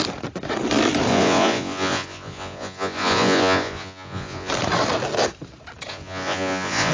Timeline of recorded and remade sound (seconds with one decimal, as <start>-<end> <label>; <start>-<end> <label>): 0.0-1.1 recorded; 1.1-4.5 remade; 4.5-5.9 recorded; 5.9-6.9 remade

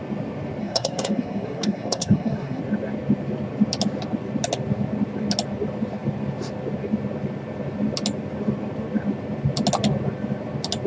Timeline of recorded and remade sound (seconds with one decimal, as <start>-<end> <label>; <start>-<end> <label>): 0.0-0.6 recorded; 0.6-2.6 remade; 2.6-10.9 recorded

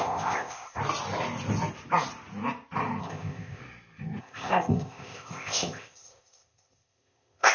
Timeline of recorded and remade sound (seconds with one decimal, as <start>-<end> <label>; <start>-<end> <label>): 0.0-0.8 remade; 0.8-3.0 recorded; 3.0-3.6 remade; 3.6-4.2 recorded; 4.2-7.5 remade